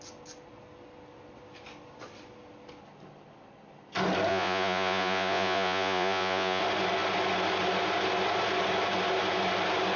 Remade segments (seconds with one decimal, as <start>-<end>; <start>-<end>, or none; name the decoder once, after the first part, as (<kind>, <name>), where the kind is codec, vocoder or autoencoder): 4.3-6.6 (vocoder, Vocos)

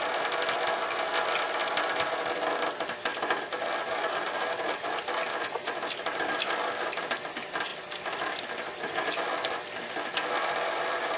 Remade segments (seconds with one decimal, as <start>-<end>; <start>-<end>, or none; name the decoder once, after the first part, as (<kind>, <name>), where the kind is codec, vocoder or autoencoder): 0.0-7.7 (vocoder, BigVGAN v2); 8.5-11.2

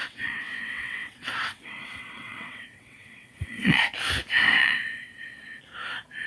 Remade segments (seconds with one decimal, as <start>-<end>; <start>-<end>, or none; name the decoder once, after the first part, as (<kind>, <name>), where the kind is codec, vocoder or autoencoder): 0.0-3.8 (vocoder, WaveNeXt); 4.6-5.6

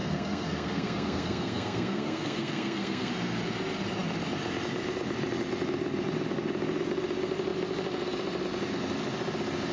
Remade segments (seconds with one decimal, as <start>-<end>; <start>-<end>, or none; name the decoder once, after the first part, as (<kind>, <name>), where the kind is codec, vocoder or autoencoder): 0.0-3.1 (codec, SNAC)

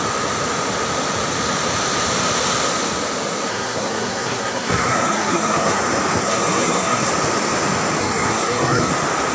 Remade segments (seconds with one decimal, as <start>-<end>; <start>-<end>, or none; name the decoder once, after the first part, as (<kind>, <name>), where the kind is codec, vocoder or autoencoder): 3.5-5.8 (codec, SNAC); 6.2-7.1; 8.0-8.9